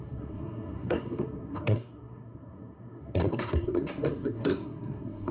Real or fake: fake